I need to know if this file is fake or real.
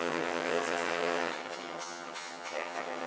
fake